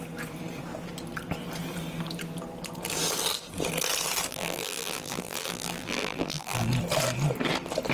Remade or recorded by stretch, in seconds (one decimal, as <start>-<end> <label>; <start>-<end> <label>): 0.0-4.3 recorded; 4.3-6.7 remade; 6.7-7.9 recorded